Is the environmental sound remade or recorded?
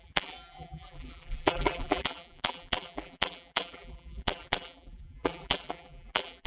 remade